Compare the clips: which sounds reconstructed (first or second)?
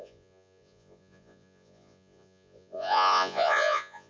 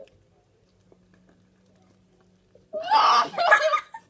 first